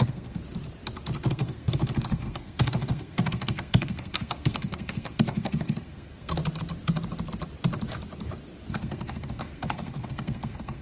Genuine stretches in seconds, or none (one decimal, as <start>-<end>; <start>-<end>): 0.4-1.3; 6.4-8.7